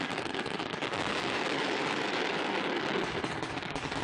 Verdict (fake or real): fake